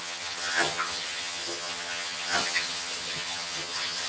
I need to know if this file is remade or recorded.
remade